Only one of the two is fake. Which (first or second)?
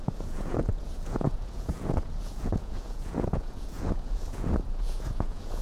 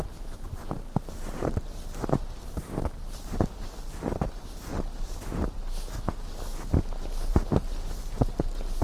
first